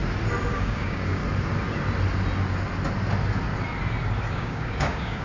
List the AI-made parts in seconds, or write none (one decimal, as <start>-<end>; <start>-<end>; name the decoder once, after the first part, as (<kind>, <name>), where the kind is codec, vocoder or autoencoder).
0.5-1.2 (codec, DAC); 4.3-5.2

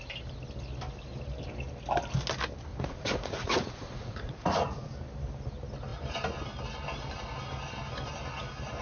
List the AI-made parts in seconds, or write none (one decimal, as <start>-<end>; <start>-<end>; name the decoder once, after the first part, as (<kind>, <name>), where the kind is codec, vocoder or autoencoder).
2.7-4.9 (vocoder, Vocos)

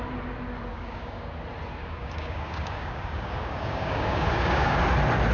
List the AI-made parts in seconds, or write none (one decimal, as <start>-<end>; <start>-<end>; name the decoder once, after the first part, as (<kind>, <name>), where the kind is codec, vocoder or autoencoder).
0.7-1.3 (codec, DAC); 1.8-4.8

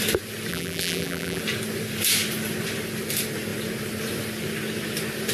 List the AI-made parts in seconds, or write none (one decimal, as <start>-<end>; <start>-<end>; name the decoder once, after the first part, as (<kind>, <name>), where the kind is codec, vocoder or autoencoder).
0.5-1.4 (vocoder, BigVGAN v2)